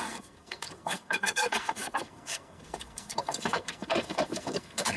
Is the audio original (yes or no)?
no